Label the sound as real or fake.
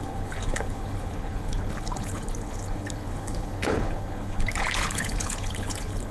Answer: fake